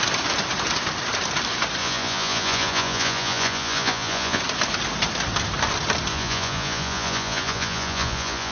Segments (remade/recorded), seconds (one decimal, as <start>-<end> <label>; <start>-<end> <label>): 0.0-1.8 recorded; 1.8-4.4 remade; 4.4-6.1 recorded; 6.1-8.5 remade